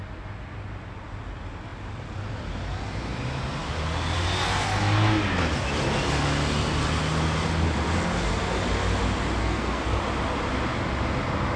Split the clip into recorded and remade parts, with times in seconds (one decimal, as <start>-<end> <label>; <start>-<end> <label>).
0.0-9.4 recorded; 9.4-10.0 remade; 10.0-11.6 recorded